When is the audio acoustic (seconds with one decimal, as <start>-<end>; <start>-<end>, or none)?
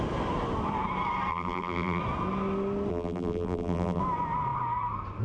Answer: 0.0-1.3; 2.0-2.9; 4.0-5.2